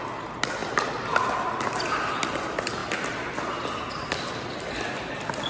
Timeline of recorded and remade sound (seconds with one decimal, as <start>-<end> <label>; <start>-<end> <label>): 0.0-5.5 recorded